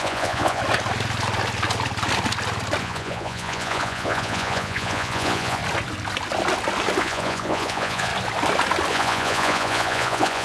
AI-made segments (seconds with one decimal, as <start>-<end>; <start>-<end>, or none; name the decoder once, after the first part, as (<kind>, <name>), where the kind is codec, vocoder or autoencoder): 0.0-0.6 (vocoder, Vocos); 2.8-5.6; 7.0-8.1; 8.9-10.4